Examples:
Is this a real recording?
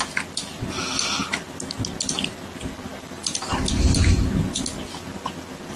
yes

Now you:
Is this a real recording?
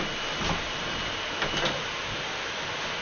no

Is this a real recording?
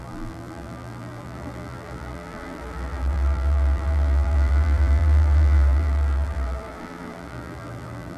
no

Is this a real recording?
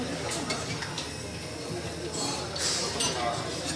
yes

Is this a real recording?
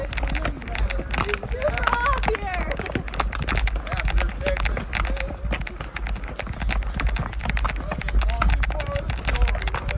yes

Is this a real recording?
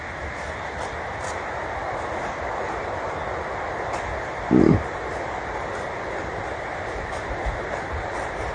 yes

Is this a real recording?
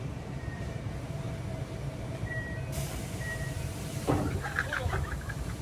no